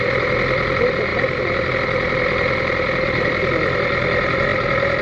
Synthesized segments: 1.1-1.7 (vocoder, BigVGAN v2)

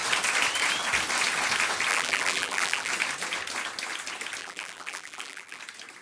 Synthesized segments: 1.9-2.9 (vocoder, BigVGAN v2); 4.4-5.6

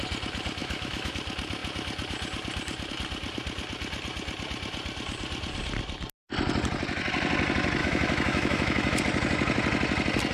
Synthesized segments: 0.6-1.1 (autoencoder, DAC-VAE); 7.8-9.0

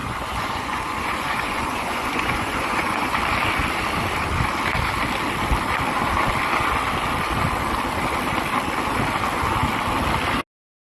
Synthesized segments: 0.0-3.2 (vocoder, Vocos)

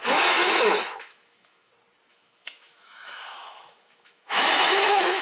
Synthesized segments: 0.0-1.7 (autoencoder, DAC-VAE); 2.1-5.2

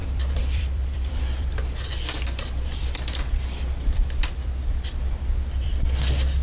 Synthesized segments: 0.0-1.9 (vocoder, BigVGAN v2); 2.8-5.7

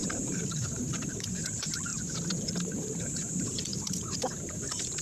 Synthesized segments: 0.0-1.9 (vocoder, BigVGAN v2); 2.4-5.0

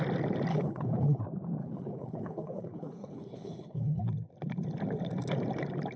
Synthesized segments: 0.5-1.2 (codec, HILCodec); 1.6-4.0